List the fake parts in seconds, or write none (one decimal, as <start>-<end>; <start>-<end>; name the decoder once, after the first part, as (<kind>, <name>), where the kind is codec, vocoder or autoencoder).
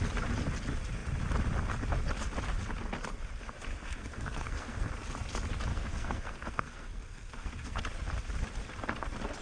3.7-4.9 (codec, SNAC); 5.7-7.8